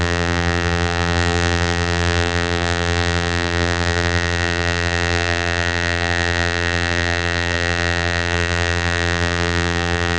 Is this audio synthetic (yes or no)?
yes